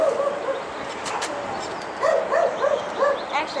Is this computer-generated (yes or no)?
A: no